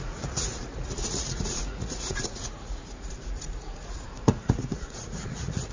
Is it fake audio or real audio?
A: fake